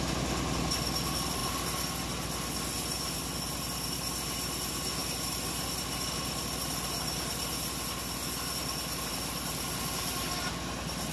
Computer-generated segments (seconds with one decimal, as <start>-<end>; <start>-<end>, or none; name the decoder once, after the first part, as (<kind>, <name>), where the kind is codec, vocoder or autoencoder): none